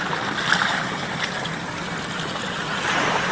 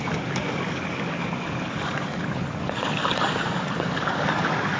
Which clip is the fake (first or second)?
second